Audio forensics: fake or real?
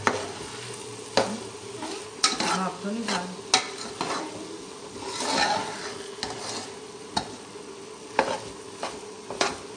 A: real